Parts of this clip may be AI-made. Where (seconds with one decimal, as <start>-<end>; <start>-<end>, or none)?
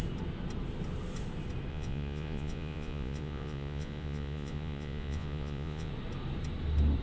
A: 1.7-5.9